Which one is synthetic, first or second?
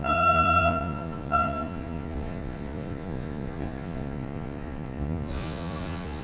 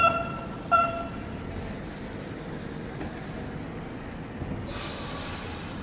first